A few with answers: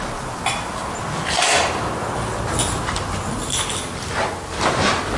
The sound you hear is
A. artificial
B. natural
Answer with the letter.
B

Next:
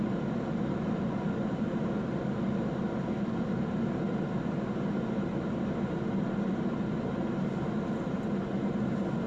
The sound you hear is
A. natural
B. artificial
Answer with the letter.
A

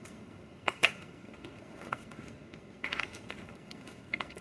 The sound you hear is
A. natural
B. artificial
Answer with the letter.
B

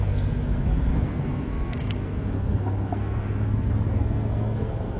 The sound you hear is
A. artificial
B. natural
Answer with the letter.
A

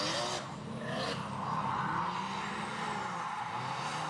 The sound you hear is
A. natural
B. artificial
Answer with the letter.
A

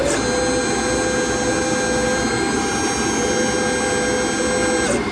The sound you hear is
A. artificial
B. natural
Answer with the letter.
B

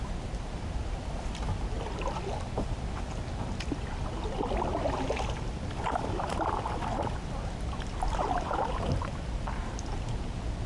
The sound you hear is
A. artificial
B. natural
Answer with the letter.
B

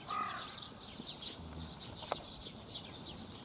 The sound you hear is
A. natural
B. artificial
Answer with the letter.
A